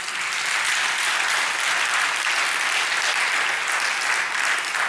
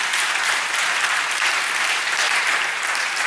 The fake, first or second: second